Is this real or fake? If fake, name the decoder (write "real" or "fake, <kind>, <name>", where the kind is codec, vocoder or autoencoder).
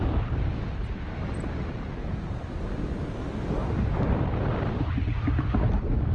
real